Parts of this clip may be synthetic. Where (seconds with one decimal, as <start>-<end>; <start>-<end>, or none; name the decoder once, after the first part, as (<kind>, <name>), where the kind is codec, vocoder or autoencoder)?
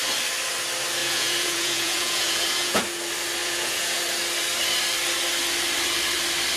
1.0-2.8 (vocoder, Vocos); 3.4-4.0